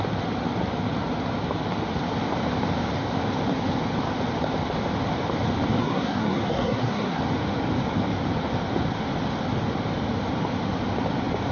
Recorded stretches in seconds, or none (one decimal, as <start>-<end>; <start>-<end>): 0.0-5.8; 7.2-11.5